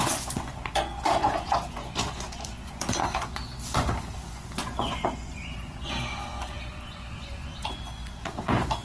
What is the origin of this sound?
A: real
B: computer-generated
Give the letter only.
B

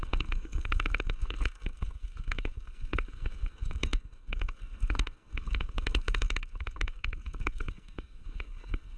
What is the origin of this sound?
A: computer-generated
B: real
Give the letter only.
A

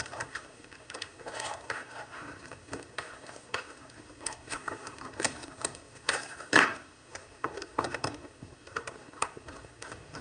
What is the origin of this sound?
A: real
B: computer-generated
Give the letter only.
B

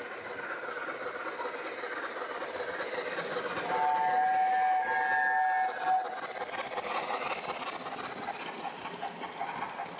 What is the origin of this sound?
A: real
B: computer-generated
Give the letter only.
A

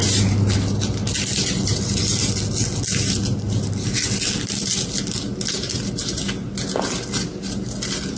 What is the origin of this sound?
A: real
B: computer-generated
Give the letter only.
A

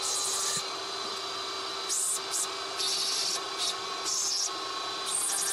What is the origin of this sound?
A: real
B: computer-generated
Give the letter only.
A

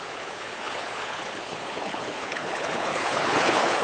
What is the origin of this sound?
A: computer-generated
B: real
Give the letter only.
A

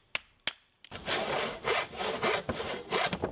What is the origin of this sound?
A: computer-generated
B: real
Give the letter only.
B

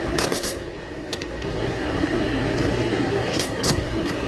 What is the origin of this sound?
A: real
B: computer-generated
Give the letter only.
B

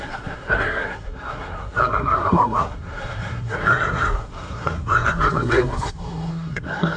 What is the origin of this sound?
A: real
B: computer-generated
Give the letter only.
B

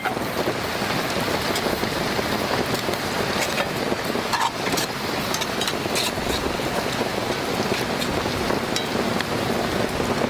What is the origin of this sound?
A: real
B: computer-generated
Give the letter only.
A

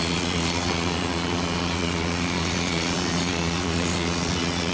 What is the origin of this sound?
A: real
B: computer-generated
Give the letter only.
B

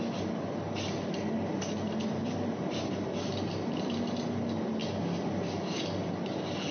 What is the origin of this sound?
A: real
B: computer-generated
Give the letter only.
A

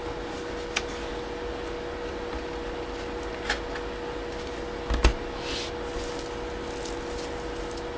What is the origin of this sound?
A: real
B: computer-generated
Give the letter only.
A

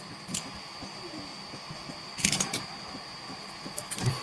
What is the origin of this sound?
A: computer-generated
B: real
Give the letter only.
B